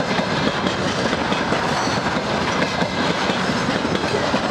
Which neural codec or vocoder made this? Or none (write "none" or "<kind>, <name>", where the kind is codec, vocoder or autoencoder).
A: none